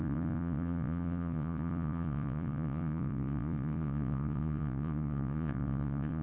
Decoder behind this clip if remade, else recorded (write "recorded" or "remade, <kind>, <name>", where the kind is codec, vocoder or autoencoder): remade, vocoder, Vocos